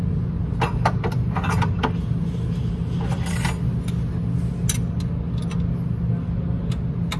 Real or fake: real